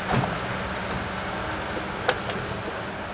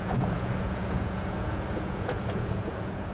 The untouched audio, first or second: first